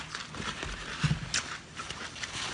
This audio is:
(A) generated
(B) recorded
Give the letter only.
B